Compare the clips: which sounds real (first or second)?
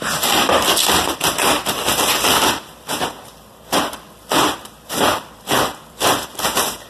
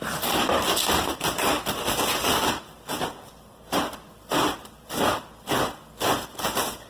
second